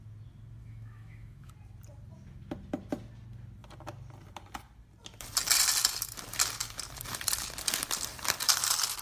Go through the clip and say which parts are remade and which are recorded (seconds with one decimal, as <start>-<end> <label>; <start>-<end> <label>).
0.0-0.6 recorded; 0.6-1.5 remade; 1.5-9.0 recorded